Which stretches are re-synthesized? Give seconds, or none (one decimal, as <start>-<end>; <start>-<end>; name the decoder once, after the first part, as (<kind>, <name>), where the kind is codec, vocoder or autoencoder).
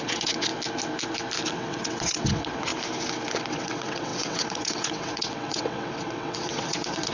0.0-0.5 (vocoder, WaveNeXt); 1.5-2.7; 3.5-7.1